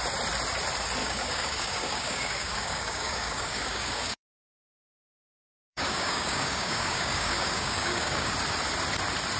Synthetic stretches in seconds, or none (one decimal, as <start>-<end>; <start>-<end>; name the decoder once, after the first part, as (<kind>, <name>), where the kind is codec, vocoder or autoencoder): 1.0-4.4 (codec, DAC); 5.0-8.3